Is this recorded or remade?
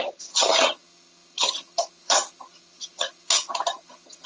remade